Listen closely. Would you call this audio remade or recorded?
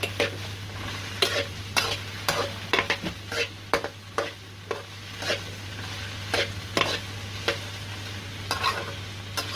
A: recorded